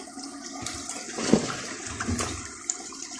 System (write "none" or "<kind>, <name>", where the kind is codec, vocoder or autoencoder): none